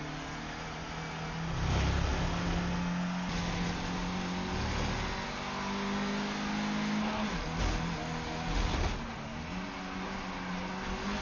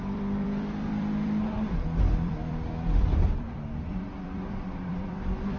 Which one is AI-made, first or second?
second